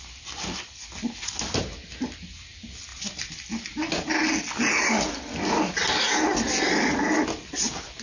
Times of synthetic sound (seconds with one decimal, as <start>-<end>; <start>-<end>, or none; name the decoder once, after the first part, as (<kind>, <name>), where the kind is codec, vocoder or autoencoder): none